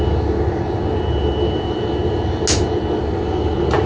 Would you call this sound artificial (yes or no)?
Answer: no